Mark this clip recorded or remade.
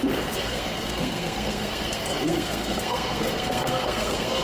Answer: remade